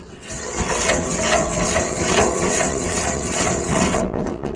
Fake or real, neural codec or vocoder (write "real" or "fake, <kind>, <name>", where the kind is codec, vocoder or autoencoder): fake, vocoder, WaveNeXt